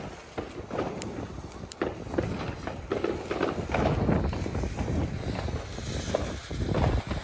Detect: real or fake real